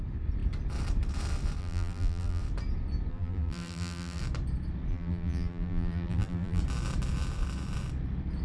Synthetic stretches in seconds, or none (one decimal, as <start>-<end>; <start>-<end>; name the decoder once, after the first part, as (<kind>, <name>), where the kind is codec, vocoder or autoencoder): 1.6-2.4 (vocoder, BigVGAN v2); 3.1-4.2; 4.9-6.6